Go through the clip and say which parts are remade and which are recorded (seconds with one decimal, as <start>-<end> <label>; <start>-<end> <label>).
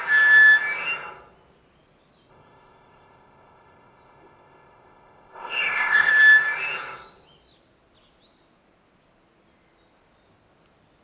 0.0-2.3 recorded; 2.3-6.1 remade; 6.1-11.0 recorded